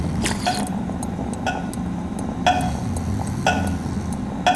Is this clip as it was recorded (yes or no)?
yes